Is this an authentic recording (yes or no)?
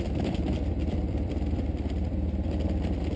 yes